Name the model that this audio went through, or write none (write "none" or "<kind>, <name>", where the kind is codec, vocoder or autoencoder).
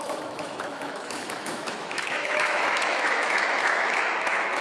autoencoder, DAC-VAE